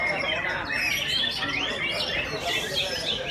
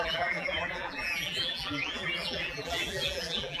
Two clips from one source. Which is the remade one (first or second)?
second